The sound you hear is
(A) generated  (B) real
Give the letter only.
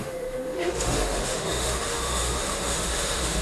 A